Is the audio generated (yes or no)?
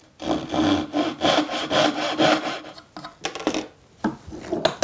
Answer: no